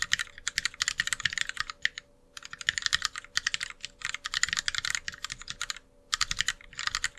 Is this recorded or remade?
recorded